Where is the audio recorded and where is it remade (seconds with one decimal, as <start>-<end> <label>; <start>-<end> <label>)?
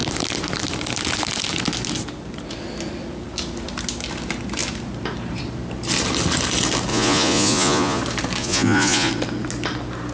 0.0-6.9 recorded; 6.9-8.0 remade; 8.0-8.4 recorded; 8.4-9.1 remade; 9.1-10.1 recorded